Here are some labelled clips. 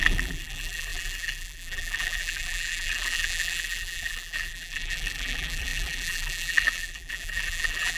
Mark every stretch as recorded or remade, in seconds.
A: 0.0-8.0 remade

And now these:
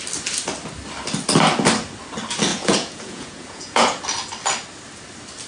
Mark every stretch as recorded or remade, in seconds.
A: 0.0-2.5 recorded; 2.5-4.0 remade; 4.0-5.5 recorded